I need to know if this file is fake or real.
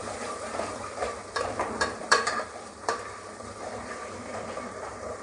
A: fake